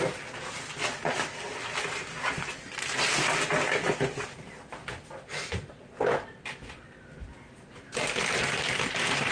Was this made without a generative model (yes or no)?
yes